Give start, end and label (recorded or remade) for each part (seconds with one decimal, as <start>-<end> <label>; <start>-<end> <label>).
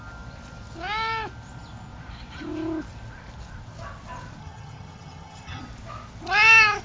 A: 0.0-4.4 recorded; 4.4-5.6 remade; 5.6-6.8 recorded